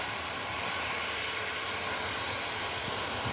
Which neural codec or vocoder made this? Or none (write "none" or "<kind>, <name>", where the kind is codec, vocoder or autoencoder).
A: none